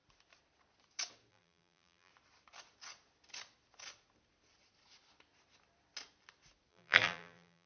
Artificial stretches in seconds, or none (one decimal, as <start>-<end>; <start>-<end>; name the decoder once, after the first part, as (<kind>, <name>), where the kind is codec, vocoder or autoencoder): 1.3-2.1 (vocoder, BigVGAN v2); 6.7-7.7